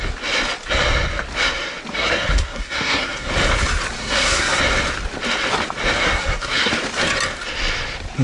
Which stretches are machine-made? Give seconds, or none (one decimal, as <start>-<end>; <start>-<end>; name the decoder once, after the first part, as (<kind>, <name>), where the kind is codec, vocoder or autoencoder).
1.9-3.3 (codec, SNAC); 4.0-4.6; 6.0-6.7